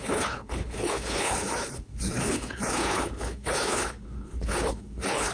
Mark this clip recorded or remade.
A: remade